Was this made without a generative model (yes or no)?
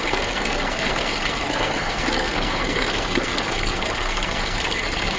no